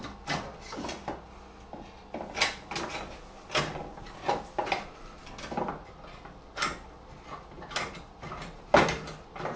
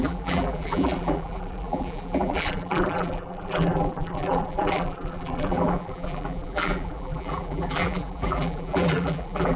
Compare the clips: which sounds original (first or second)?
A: first